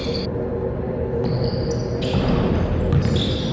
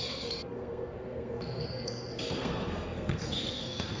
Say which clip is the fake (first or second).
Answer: second